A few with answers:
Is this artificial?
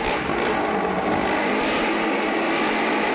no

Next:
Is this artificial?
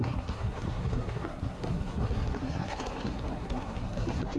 yes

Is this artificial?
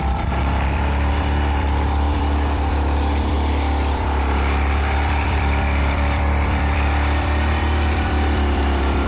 yes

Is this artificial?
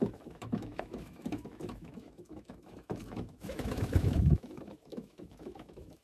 yes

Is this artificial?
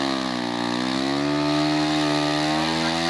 no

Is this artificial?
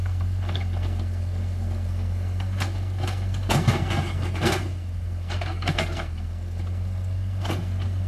yes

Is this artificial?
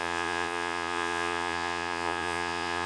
yes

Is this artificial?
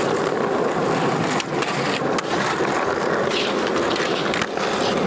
no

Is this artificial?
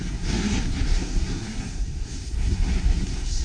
yes